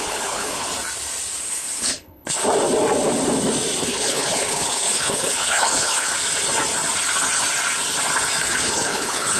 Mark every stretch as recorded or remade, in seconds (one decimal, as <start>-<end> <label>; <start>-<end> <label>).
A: 0.0-0.7 remade; 0.7-1.4 recorded; 1.4-2.4 remade; 2.4-3.8 recorded; 3.8-6.1 remade; 6.1-8.4 recorded; 8.4-9.4 remade